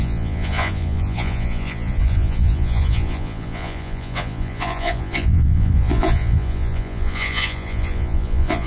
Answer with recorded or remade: remade